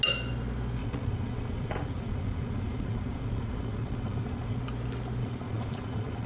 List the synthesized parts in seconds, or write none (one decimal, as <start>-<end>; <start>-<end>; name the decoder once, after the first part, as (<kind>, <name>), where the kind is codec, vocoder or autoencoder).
0.8-4.6 (vocoder, Vocos); 5.2-6.3